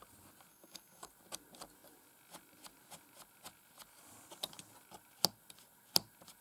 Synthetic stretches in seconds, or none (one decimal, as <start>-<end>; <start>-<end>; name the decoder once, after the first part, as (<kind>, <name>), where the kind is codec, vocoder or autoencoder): 0.5-1.1 (codec, DAC)